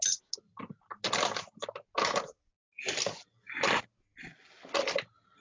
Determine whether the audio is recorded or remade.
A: recorded